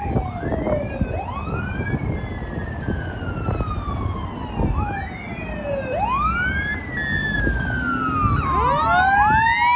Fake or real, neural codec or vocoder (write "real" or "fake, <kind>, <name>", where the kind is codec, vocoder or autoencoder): real